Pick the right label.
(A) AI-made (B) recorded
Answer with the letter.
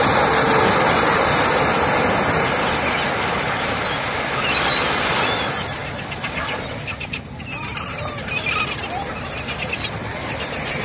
B